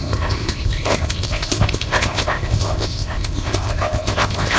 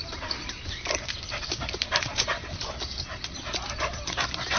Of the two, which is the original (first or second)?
second